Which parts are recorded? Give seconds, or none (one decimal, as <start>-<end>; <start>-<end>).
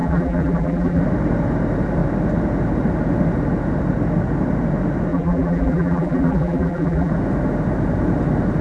1.0-5.1; 7.1-8.6